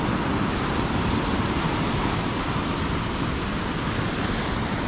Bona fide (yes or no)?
yes